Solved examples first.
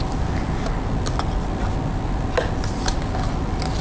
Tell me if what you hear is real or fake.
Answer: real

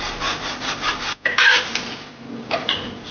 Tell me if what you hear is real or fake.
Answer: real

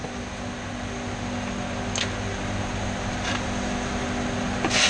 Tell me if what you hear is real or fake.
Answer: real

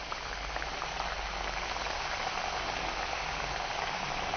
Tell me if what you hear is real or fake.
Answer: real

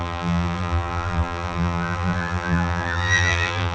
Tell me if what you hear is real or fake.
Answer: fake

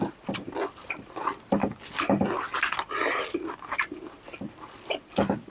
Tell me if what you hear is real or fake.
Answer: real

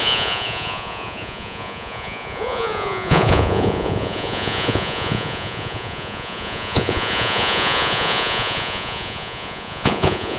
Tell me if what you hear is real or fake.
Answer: fake